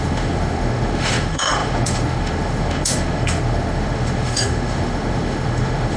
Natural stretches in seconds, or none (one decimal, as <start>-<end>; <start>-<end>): none